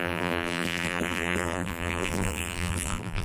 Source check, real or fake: fake